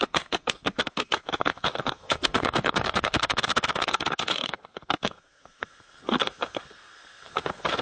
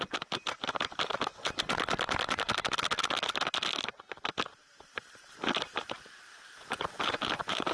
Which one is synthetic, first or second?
first